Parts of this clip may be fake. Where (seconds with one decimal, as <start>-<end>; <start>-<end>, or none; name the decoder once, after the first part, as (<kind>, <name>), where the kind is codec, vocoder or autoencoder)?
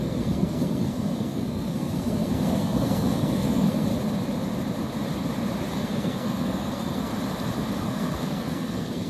0.0-3.9 (codec, SNAC); 5.7-7.1; 7.8-9.1